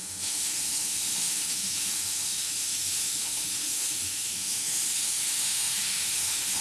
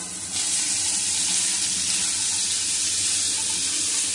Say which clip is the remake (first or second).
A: first